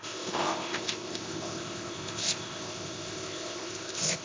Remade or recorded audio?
remade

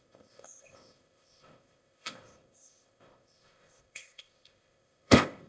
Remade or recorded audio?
remade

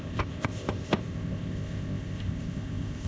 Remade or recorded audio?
remade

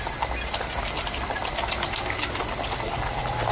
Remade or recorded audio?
recorded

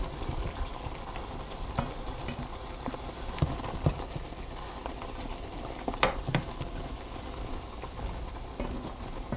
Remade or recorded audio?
recorded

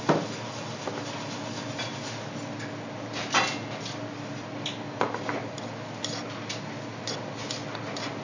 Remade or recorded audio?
recorded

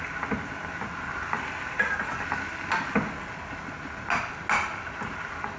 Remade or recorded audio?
recorded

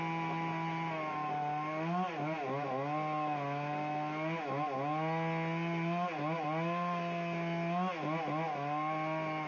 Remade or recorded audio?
recorded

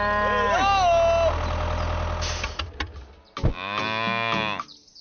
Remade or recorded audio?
recorded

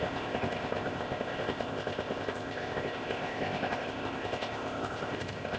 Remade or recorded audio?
remade